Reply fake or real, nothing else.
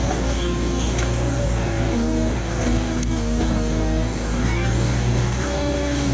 fake